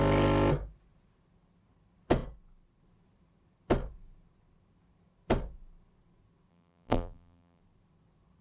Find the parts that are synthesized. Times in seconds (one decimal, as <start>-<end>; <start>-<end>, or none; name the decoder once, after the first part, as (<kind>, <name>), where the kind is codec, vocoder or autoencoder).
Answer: 6.5-7.6 (vocoder, BigVGAN v2)